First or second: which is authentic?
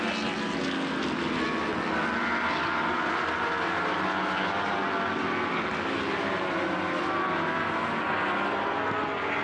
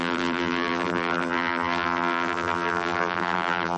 first